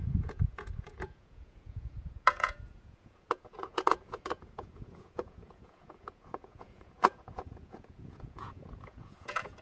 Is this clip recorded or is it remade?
remade